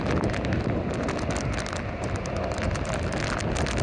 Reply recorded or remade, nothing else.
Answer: recorded